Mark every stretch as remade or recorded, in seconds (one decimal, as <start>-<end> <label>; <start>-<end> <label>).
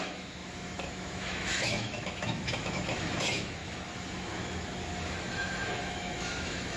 0.0-6.8 remade